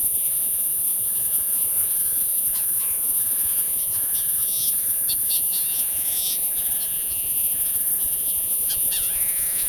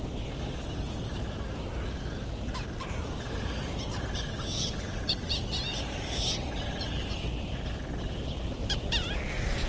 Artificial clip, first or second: first